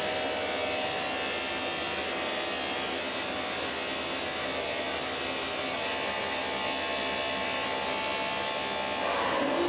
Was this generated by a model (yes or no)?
no